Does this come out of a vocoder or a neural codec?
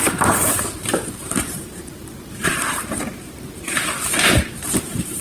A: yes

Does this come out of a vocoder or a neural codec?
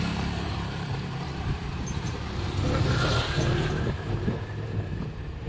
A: yes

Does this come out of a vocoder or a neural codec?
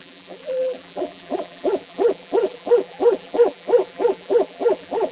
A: yes